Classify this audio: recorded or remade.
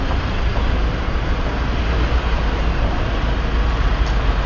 recorded